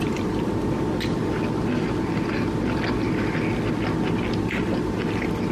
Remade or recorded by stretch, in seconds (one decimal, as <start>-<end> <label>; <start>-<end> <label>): 0.0-5.5 recorded